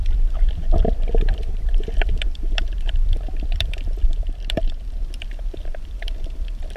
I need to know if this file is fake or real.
fake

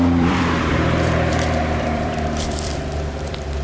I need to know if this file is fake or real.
fake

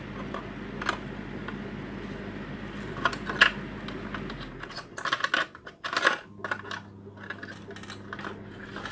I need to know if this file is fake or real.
real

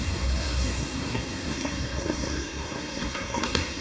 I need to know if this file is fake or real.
fake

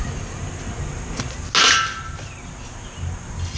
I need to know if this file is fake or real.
real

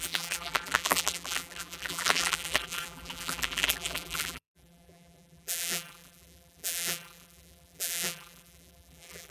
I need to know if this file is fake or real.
fake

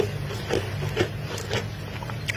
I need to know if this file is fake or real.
real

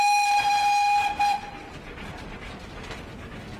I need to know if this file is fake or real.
real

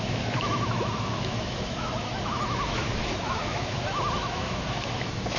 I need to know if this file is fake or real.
fake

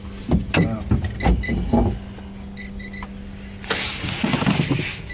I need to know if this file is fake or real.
real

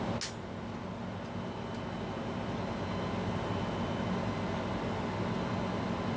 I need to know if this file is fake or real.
real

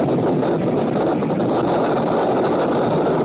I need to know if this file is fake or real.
real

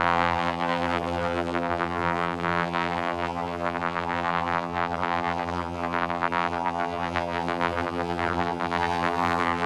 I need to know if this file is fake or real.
fake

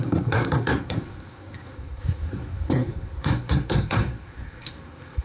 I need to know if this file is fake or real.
fake